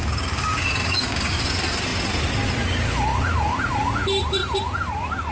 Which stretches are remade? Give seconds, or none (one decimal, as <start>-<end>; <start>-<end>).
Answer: 0.0-1.4